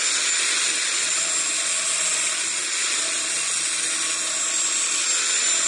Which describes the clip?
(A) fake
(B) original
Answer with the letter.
B